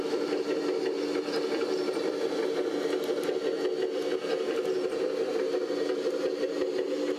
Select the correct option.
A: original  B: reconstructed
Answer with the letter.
A